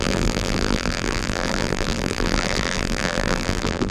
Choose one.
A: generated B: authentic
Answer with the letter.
A